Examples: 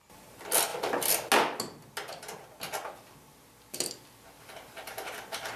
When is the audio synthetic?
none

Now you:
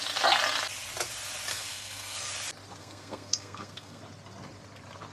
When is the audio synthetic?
1.5-2.3 (codec, SNAC); 2.8-4.0

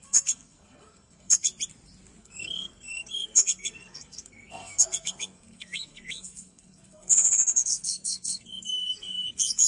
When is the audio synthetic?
0.0-1.5 (codec, SNAC); 2.2-9.7